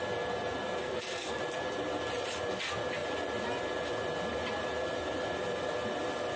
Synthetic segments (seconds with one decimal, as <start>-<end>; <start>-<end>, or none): 0.8-1.4